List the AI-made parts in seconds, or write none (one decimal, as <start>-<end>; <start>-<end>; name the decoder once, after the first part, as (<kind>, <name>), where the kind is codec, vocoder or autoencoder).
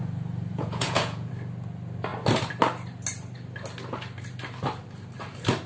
0.5-1.3 (vocoder, Vocos)